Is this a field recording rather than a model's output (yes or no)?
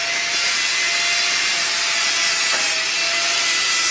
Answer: yes